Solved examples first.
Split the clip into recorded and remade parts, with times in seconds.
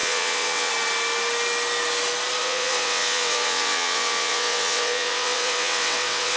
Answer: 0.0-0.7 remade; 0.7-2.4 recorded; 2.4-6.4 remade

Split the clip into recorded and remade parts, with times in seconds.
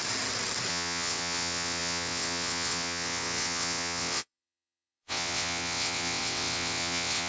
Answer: 0.0-0.7 recorded; 0.7-7.3 remade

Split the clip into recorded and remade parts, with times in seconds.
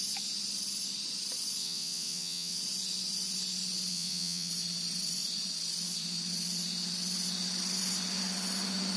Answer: 0.0-1.6 recorded; 1.6-2.6 remade; 2.6-3.9 recorded; 3.9-4.5 remade; 4.5-9.0 recorded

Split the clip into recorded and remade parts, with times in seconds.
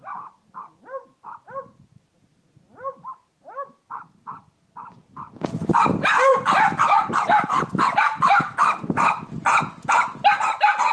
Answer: 0.0-10.9 recorded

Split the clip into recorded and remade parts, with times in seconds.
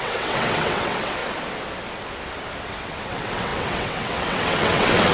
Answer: 0.0-1.2 remade; 1.2-2.6 recorded; 2.6-5.1 remade